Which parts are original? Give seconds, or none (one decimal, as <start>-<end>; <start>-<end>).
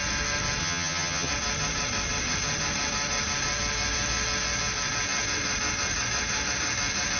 0.0-0.6; 1.3-7.2